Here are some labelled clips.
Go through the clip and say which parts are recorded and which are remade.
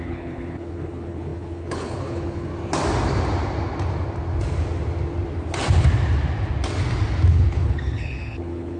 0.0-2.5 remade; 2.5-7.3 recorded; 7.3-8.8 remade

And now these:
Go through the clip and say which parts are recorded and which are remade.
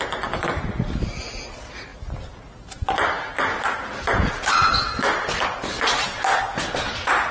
0.0-7.3 recorded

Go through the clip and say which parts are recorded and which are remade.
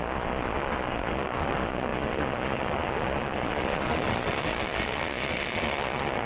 0.0-6.3 remade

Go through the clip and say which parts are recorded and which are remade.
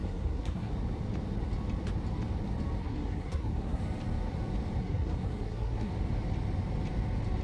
0.0-0.7 remade; 0.7-2.8 recorded; 2.8-3.8 remade; 3.8-4.8 recorded; 4.8-5.9 remade; 5.9-7.4 recorded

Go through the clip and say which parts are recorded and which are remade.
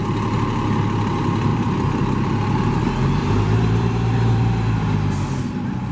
0.0-1.5 recorded; 1.5-2.0 remade; 2.0-3.2 recorded; 3.2-4.5 remade; 4.5-5.9 recorded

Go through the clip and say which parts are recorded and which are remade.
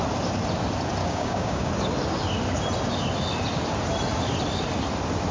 0.0-1.0 recorded; 1.0-1.7 remade; 1.7-5.3 recorded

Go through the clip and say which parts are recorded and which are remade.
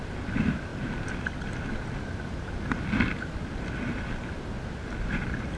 0.0-5.6 recorded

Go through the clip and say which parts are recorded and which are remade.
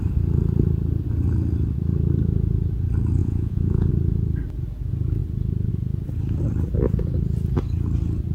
0.0-3.2 recorded; 3.2-3.9 remade; 3.9-8.3 recorded